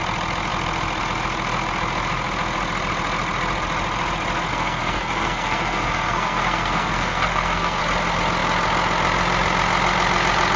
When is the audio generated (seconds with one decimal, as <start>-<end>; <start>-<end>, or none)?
4.5-7.8